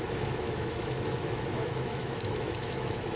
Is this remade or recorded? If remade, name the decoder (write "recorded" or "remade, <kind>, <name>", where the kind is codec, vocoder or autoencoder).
remade, autoencoder, DAC-VAE